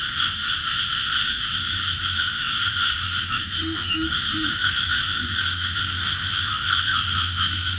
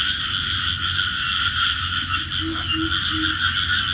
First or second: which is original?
second